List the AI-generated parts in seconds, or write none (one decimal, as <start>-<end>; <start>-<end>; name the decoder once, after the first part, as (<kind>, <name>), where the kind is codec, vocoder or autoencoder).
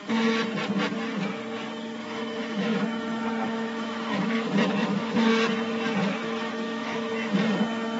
2.0-5.3 (autoencoder, DAC-VAE); 6.0-7.1